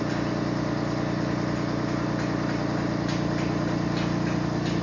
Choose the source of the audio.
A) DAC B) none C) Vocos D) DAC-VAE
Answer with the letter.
B